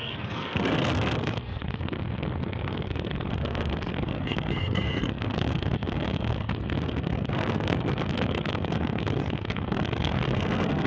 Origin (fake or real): fake